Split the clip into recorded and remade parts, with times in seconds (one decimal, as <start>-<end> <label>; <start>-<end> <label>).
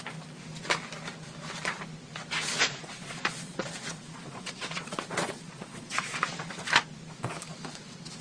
0.0-2.6 recorded; 2.6-6.5 remade; 6.5-8.2 recorded